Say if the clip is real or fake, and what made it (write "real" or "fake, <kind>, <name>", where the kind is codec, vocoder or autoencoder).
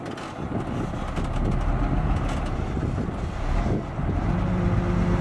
real